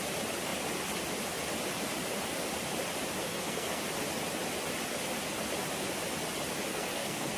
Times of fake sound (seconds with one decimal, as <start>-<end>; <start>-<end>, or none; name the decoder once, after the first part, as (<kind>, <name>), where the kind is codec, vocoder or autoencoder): 3.2-3.8 (codec, SNAC); 6.7-7.4